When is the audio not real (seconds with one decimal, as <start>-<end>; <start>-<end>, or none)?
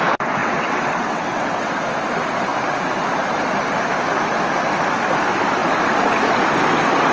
0.4-1.8